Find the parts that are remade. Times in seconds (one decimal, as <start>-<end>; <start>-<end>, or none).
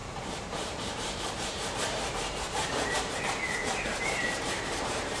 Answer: 0.0-3.1; 3.6-5.2